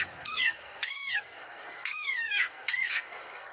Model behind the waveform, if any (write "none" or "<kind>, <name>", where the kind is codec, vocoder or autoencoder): codec, SNAC